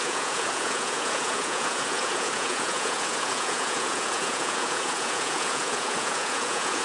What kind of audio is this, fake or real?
fake